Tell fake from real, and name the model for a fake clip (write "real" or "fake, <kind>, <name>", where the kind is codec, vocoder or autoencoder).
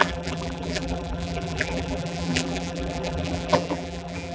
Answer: fake, vocoder, BigVGAN v2